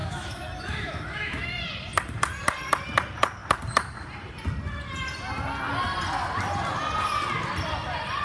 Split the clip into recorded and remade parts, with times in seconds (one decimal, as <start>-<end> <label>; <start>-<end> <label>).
0.0-1.6 remade; 1.6-8.2 recorded